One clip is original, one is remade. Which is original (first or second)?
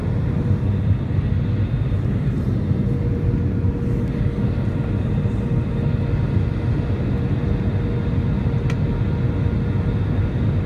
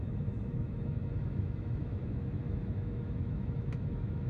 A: first